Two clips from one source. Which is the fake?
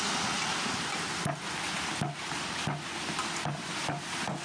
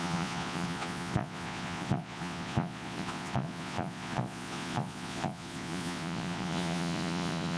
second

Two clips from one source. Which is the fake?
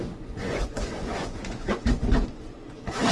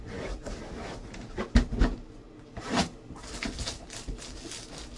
first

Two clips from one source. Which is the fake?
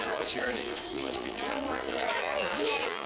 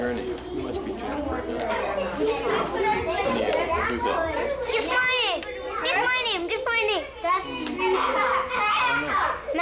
first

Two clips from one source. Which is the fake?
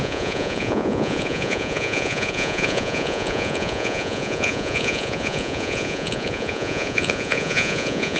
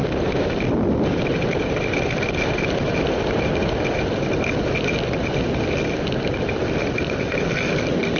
first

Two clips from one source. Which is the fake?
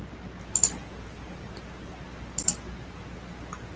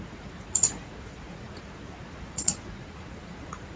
second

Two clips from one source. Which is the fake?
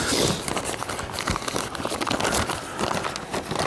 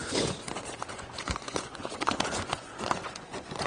second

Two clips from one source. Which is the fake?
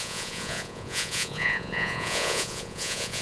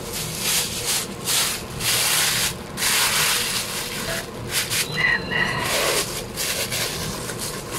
first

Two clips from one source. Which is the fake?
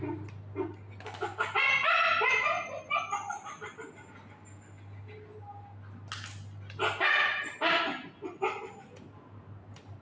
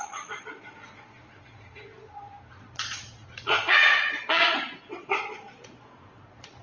second